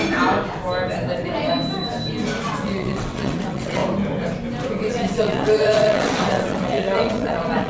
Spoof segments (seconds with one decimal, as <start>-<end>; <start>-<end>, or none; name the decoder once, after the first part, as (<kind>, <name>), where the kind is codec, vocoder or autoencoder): 2.5-3.8 (vocoder, WaveNeXt); 4.9-7.7